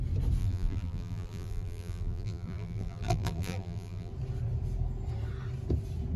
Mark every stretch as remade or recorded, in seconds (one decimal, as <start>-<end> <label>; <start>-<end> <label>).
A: 0.0-0.4 recorded; 0.4-4.1 remade; 4.1-6.2 recorded